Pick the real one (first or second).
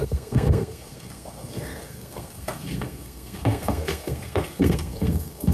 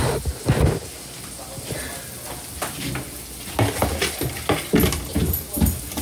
second